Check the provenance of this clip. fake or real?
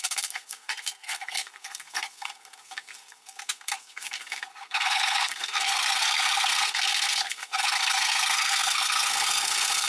fake